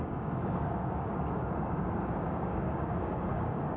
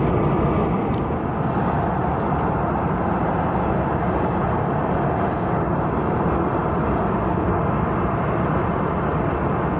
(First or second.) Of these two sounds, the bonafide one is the second